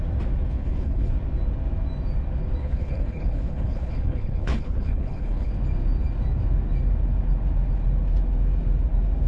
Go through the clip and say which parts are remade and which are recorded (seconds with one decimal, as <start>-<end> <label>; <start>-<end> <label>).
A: 0.0-0.5 recorded; 0.5-1.1 remade; 1.1-2.6 recorded; 2.6-5.5 remade; 5.5-9.3 recorded